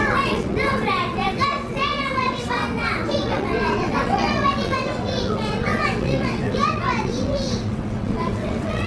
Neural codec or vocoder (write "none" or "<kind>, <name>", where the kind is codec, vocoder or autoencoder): vocoder, WaveNeXt